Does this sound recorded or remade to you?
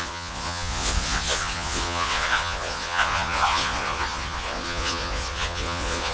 remade